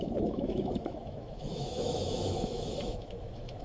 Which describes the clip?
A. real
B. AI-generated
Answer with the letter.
B